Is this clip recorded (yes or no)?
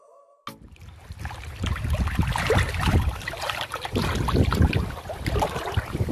yes